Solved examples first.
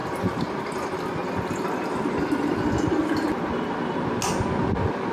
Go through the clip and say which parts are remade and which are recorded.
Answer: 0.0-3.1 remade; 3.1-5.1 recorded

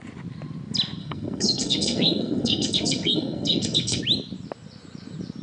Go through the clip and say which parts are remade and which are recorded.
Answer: 0.0-1.0 recorded; 1.0-4.0 remade; 4.0-5.4 recorded

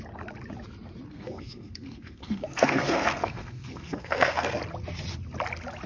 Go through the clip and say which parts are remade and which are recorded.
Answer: 0.0-1.1 recorded; 1.1-4.6 remade; 4.6-5.9 recorded

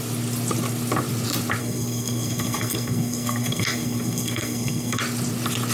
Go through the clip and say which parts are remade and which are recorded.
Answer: 0.0-1.6 recorded; 1.6-5.0 remade; 5.0-5.7 recorded